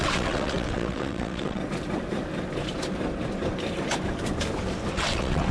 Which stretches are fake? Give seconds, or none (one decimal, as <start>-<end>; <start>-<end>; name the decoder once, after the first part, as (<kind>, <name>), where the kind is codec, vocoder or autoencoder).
0.0-1.6 (vocoder, WaveNeXt); 4.9-5.5